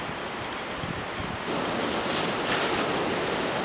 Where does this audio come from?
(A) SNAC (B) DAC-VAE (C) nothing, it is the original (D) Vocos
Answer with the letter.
C